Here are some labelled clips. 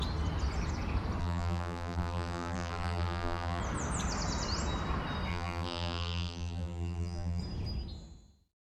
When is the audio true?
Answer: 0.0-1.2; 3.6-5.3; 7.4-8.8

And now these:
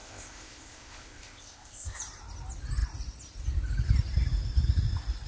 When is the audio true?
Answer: 2.0-5.3

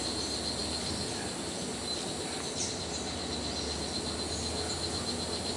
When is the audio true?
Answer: 0.0-5.6